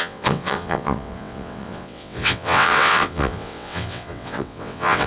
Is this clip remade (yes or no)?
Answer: yes